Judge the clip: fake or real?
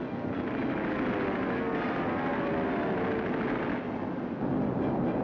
real